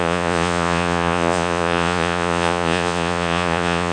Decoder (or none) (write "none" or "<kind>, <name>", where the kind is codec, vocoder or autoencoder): vocoder, Vocos